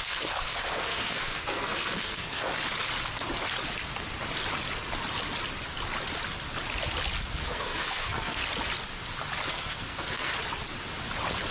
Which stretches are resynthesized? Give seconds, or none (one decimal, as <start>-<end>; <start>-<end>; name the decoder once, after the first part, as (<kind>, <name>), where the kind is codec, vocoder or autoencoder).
0.0-2.5 (codec, SNAC); 7.3-8.4; 9.5-10.3